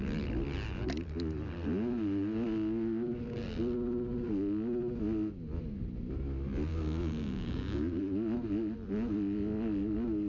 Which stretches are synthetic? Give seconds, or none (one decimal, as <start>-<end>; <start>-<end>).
6.7-8.0